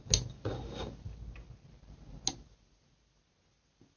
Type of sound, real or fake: real